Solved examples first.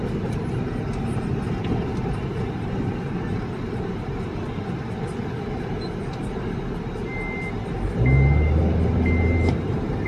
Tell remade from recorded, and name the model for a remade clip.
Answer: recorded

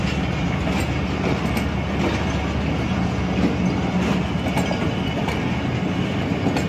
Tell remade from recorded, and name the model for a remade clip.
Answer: recorded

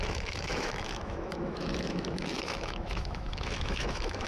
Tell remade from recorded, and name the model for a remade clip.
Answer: remade, autoencoder, DAC-VAE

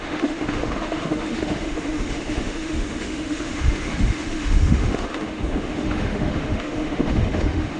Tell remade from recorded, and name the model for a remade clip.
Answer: remade, autoencoder, DAC-VAE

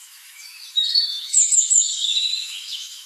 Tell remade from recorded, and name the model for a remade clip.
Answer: remade, autoencoder, DAC-VAE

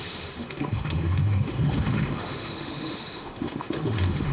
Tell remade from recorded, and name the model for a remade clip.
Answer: remade, autoencoder, DAC-VAE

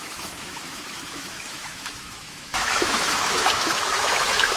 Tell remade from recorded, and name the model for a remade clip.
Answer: remade, autoencoder, DAC-VAE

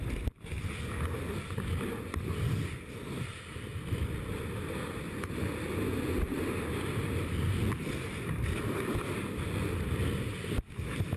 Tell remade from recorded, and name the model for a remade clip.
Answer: recorded